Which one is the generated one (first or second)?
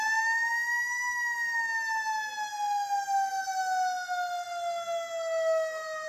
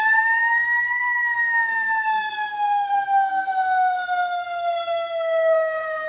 second